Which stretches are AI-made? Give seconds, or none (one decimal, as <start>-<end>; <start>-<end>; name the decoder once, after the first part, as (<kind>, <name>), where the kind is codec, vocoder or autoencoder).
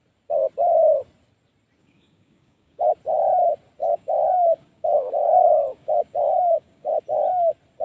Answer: 1.8-2.9 (codec, DAC); 3.8-7.0